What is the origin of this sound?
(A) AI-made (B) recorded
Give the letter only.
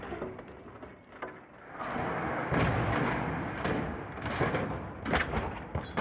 B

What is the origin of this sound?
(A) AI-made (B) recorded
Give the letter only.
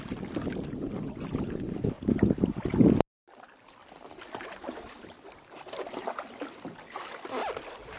B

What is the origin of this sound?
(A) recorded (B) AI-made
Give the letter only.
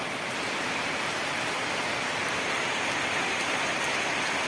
B